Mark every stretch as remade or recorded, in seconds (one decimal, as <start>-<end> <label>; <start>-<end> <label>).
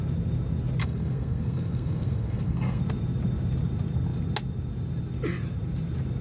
0.0-0.8 recorded; 0.8-2.8 remade; 2.8-6.2 recorded